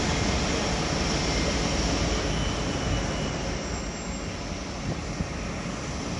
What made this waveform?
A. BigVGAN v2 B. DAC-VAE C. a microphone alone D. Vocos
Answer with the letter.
C